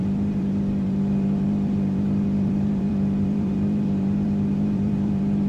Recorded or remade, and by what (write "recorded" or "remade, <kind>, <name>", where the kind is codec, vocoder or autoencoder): remade, vocoder, BigVGAN v2